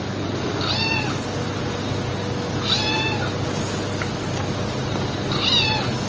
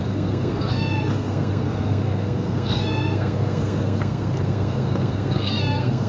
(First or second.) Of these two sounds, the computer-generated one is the second